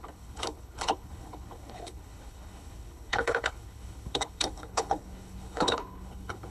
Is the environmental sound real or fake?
fake